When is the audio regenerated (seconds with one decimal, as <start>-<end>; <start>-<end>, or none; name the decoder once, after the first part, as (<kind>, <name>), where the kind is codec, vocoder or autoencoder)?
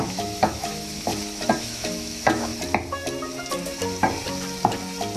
0.0-1.1 (autoencoder, DAC-VAE); 1.6-2.5